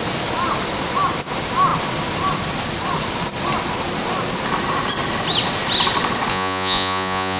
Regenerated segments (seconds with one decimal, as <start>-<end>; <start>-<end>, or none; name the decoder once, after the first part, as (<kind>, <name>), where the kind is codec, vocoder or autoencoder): 6.3-7.4 (vocoder, Vocos)